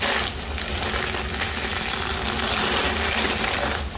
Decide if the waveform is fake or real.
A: real